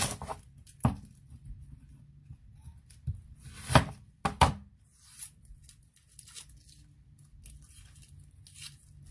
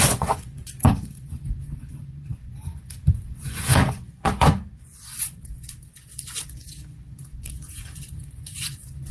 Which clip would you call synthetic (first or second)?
second